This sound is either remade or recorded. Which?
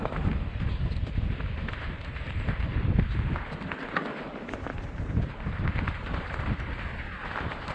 remade